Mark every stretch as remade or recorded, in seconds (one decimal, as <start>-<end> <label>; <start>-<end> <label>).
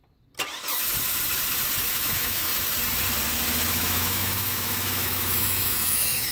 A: 0.0-1.9 recorded; 1.9-2.5 remade; 2.5-3.7 recorded; 3.7-6.3 remade